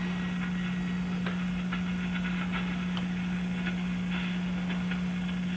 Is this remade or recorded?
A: recorded